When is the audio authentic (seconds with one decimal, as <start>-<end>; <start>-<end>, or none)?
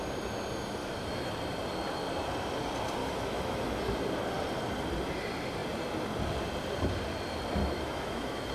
0.0-0.8; 1.3-3.0; 3.8-7.6